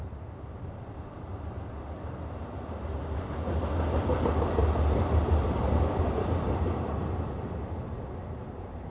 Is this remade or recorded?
recorded